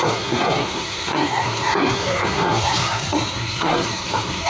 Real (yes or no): no